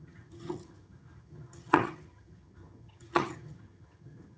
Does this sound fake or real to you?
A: fake